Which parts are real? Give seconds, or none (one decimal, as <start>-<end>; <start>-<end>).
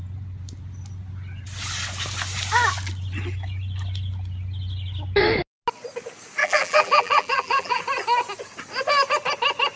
0.0-6.4; 7.8-9.8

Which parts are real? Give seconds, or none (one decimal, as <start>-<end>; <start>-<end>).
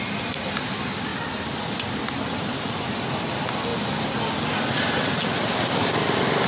0.0-6.5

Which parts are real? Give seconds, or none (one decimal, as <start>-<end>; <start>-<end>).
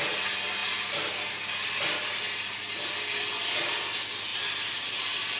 0.0-4.3; 4.9-5.4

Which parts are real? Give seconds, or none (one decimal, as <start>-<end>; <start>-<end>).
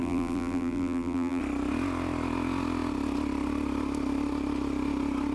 1.4-5.3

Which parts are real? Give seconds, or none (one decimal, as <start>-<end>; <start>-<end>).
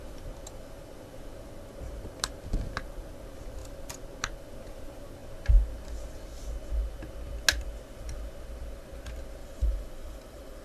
0.0-9.4